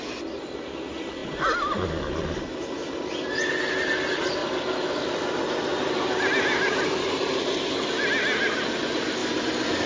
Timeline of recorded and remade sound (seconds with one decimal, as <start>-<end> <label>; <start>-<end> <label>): 0.0-4.4 recorded; 4.4-5.1 remade; 5.1-5.7 recorded; 5.7-7.6 remade; 7.6-9.9 recorded